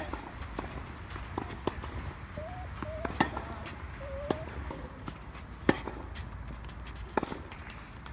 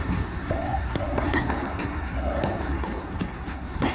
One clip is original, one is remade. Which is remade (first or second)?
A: second